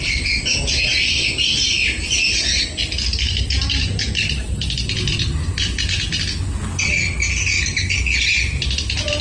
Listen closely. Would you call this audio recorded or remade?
recorded